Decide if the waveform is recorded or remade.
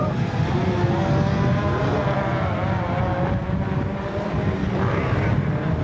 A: recorded